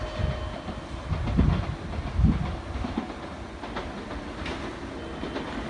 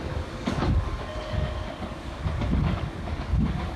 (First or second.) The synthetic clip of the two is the second